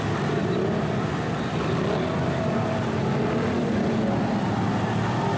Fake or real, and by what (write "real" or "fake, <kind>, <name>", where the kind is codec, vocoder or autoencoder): real